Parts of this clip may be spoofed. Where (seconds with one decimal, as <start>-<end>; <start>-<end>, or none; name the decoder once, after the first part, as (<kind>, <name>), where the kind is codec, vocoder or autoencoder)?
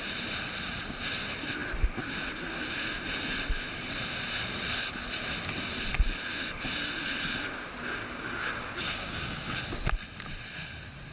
8.0-9.6 (codec, DAC)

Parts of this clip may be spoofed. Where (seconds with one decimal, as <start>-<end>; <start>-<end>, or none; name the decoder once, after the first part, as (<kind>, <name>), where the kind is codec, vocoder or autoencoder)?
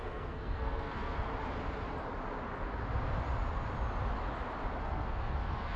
0.0-1.3 (codec, SNAC); 4.8-5.8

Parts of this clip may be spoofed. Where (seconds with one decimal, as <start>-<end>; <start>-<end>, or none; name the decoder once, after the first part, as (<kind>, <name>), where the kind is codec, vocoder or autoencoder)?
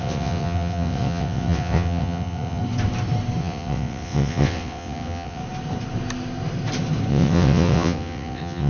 0.0-2.6 (vocoder, WaveNeXt); 3.4-5.4; 7.1-8.7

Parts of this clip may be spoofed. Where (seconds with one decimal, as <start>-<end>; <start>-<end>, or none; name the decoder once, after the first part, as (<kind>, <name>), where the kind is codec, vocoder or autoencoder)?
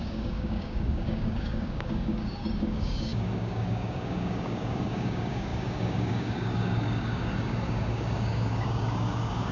0.0-9.5 (codec, DAC)